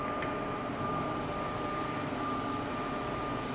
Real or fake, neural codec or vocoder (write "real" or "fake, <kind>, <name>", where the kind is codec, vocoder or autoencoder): fake, vocoder, BigVGAN v2